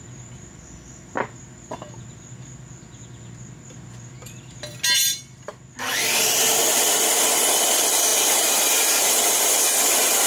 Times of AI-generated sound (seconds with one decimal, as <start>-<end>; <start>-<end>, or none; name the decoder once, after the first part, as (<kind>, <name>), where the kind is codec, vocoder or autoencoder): 8.1-9.5 (vocoder, BigVGAN v2)